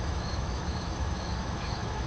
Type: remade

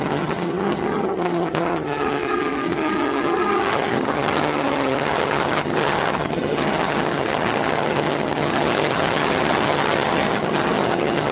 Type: remade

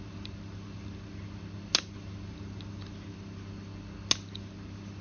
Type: recorded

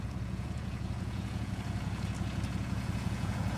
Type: remade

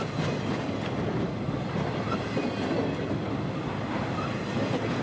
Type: recorded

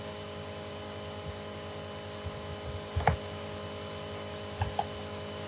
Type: recorded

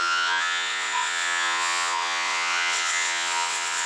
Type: remade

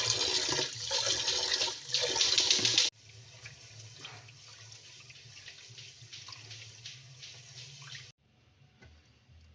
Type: recorded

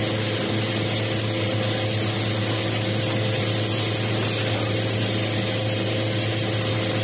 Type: recorded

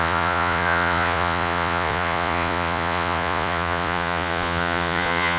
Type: remade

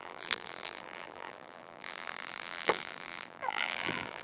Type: remade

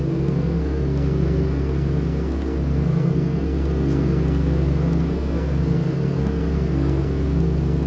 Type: remade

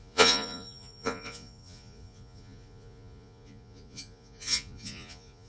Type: remade